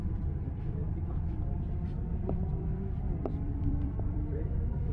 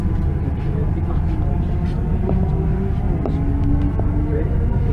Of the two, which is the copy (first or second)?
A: first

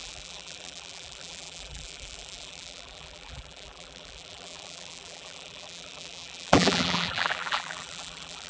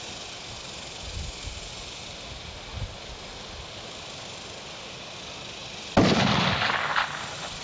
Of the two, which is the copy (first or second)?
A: first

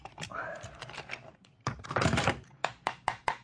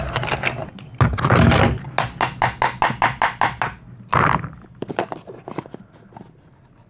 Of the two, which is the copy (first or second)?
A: first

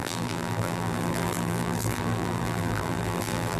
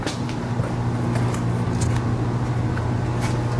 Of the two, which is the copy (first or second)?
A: first